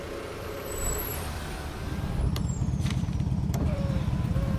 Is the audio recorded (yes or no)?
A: no